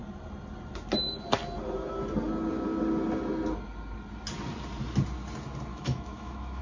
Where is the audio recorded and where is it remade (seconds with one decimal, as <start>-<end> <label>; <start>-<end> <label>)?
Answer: 0.0-5.7 recorded; 5.7-6.6 remade